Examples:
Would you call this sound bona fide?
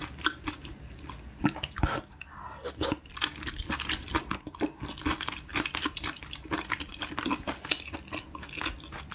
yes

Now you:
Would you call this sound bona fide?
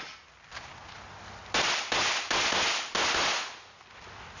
yes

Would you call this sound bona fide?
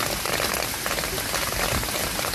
yes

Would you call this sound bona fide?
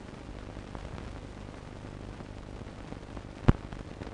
yes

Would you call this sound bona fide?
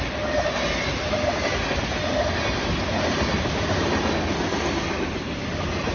yes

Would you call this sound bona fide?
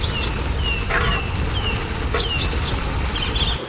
yes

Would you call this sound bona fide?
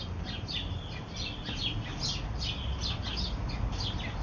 yes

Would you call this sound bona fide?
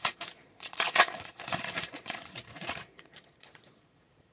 no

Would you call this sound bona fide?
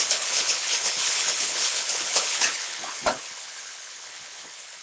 no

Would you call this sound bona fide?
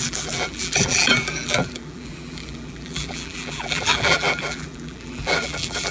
no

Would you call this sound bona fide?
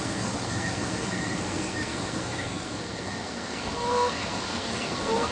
no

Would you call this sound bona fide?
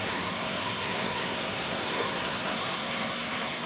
no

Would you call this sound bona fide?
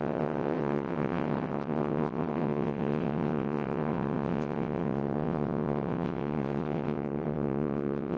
no